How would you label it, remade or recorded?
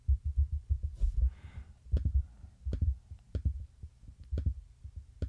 remade